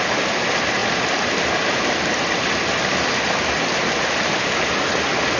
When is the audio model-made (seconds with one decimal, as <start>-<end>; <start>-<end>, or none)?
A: none